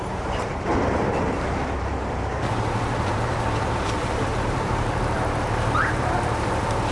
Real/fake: fake